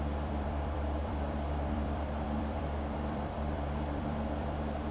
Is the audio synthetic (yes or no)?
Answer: yes